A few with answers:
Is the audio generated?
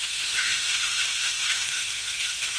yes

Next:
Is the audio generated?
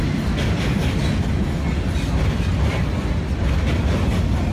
no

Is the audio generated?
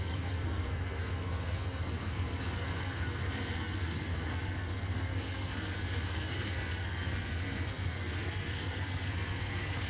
yes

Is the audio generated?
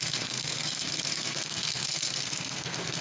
yes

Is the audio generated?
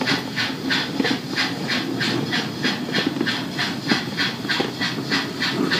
no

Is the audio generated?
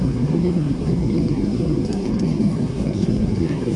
yes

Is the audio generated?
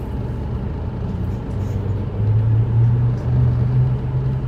no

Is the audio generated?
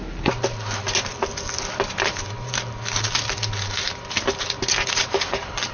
no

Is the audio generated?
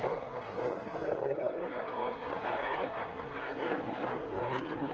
yes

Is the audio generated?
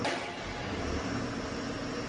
no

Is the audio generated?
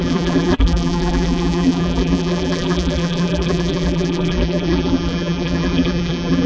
yes